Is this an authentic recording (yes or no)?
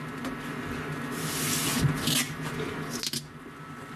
yes